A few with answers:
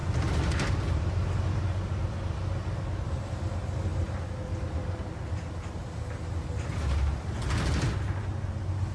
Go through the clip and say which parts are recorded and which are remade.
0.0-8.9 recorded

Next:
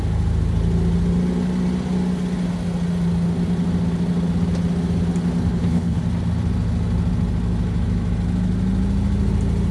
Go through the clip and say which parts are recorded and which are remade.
0.0-5.5 recorded; 5.5-6.0 remade; 6.0-9.7 recorded